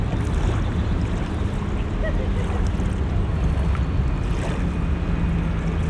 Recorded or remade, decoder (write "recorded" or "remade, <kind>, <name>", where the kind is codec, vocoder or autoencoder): recorded